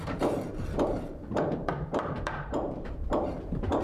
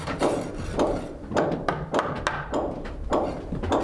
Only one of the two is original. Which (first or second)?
second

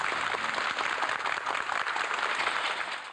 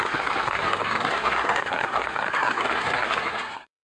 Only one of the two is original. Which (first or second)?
first